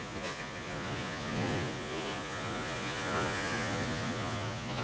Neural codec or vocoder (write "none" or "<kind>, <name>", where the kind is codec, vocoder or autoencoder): vocoder, Vocos